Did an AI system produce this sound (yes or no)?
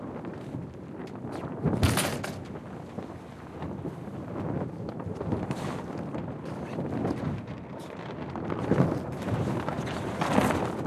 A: no